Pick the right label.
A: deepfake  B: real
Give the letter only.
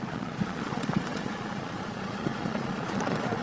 A